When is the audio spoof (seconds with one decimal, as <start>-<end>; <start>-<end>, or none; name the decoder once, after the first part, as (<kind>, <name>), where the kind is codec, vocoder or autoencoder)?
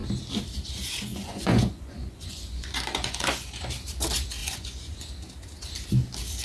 1.1-3.7 (vocoder, Vocos); 4.4-5.1